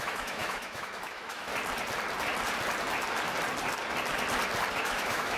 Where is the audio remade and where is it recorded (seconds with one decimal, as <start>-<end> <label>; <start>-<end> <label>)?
0.0-1.5 remade; 1.5-4.7 recorded; 4.7-5.4 remade